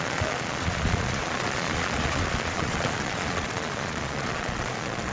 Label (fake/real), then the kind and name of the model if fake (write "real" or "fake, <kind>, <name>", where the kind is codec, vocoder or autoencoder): fake, vocoder, Vocos